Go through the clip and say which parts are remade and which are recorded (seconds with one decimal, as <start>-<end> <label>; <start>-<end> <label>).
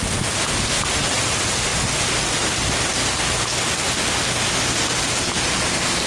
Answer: 0.0-6.1 recorded